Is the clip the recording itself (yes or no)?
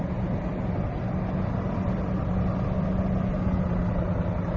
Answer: yes